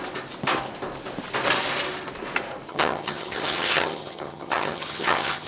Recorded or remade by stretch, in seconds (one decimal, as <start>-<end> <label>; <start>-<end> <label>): 0.0-2.7 recorded; 2.7-5.5 remade